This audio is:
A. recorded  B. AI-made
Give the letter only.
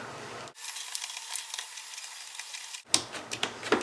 A